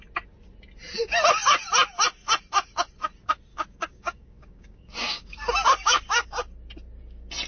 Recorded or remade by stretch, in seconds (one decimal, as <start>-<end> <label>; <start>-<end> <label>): 0.0-3.5 recorded; 3.5-6.3 remade; 6.3-7.5 recorded